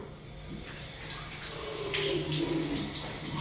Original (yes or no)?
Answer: yes